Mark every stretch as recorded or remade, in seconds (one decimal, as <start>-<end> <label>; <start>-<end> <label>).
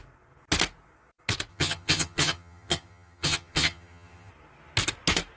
0.0-1.5 recorded; 1.5-4.3 remade; 4.3-5.4 recorded